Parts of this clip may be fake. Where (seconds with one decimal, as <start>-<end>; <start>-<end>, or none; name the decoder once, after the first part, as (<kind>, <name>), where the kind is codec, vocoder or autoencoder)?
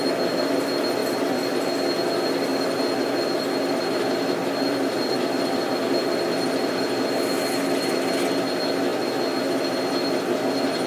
1.0-1.6 (vocoder, BigVGAN v2); 2.5-6.8